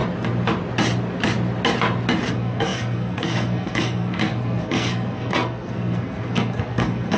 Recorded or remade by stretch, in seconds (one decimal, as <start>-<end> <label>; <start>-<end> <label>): 0.0-2.3 recorded; 2.3-7.2 remade